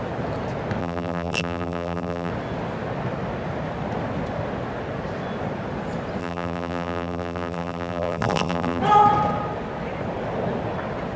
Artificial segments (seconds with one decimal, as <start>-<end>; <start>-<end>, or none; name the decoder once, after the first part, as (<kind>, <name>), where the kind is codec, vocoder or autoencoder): 0.8-2.3 (vocoder, BigVGAN v2); 6.2-8.8